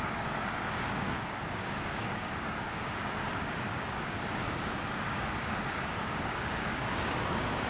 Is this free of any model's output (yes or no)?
no